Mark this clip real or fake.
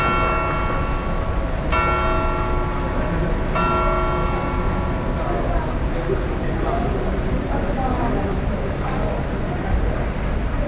real